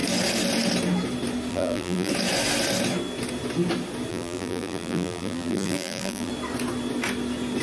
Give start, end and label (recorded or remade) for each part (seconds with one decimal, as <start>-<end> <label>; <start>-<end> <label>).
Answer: 0.0-1.5 recorded; 1.5-2.1 remade; 2.1-4.1 recorded; 4.1-6.3 remade; 6.3-7.6 recorded

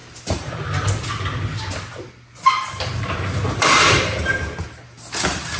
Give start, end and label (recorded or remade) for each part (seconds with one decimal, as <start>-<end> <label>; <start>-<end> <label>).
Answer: 0.0-0.6 remade; 0.6-2.4 recorded; 2.4-5.6 remade

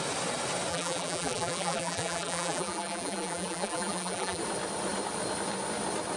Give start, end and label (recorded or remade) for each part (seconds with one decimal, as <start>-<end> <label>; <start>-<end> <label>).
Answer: 0.0-0.7 recorded; 0.7-4.4 remade; 4.4-6.2 recorded

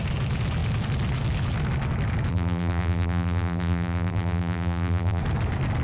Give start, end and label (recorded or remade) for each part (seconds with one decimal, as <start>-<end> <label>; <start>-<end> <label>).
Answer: 0.0-2.3 recorded; 2.3-5.2 remade; 5.2-5.8 recorded

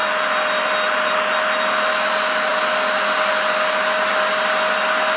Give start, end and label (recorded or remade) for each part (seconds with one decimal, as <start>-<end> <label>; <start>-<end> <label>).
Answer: 0.0-5.2 recorded

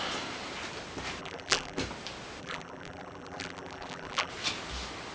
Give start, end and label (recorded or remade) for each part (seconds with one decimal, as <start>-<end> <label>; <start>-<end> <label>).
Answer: 0.0-1.2 recorded; 1.2-1.8 remade; 1.8-2.4 recorded; 2.4-4.3 remade; 4.3-5.1 recorded

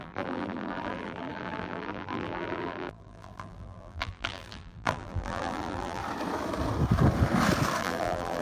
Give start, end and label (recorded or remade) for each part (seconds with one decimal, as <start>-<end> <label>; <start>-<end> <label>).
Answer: 0.0-6.0 remade; 6.0-7.8 recorded; 7.8-8.4 remade